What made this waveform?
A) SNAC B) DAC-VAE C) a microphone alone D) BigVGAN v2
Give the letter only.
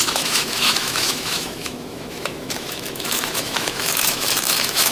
B